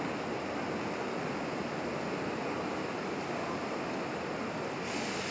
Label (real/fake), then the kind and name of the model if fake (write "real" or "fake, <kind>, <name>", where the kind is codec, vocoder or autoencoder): real